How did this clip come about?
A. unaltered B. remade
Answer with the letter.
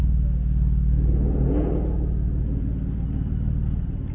A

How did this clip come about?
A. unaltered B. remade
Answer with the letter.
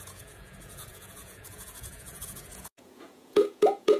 B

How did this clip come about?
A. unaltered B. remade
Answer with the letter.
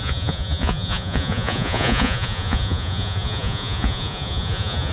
B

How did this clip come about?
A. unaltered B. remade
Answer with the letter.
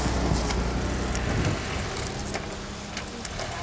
A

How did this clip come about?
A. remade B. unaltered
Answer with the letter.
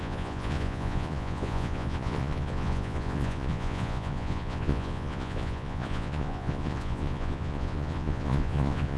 A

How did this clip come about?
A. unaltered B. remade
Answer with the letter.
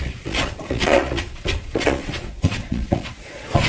B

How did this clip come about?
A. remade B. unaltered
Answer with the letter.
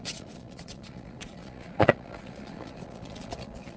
A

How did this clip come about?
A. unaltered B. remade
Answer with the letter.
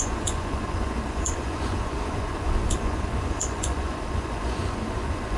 B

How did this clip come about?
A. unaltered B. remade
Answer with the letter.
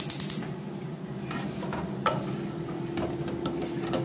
A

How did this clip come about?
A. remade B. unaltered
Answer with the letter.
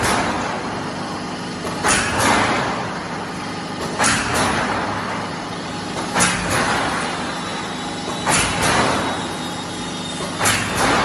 B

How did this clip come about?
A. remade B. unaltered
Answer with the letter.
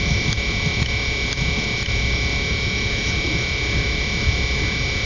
B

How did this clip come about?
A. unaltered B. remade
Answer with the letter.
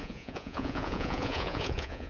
B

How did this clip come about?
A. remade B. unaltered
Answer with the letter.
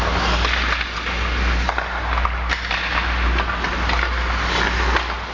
B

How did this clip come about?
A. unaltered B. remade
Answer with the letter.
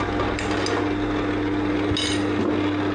A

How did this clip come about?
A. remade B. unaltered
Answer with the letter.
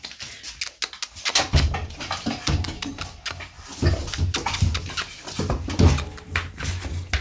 B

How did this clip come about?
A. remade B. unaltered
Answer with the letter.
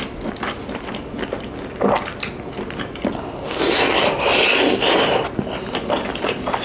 B